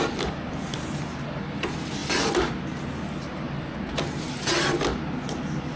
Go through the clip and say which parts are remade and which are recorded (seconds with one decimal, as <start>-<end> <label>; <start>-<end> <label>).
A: 0.0-5.8 recorded